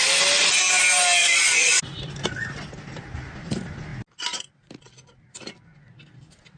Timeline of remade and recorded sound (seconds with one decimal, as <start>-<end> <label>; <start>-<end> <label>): 0.0-1.2 recorded; 1.2-1.8 remade; 1.8-6.6 recorded